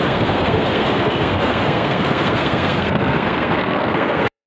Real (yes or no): no